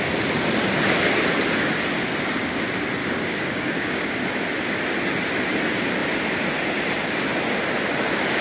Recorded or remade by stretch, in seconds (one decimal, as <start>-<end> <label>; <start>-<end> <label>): 0.0-3.0 recorded; 3.0-4.2 remade; 4.2-8.4 recorded